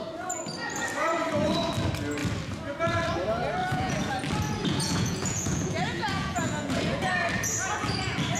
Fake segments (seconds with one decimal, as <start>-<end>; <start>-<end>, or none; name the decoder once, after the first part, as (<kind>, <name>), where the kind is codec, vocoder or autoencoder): 3.6-4.1 (vocoder, Vocos); 4.6-7.1